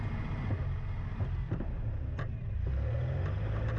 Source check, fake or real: real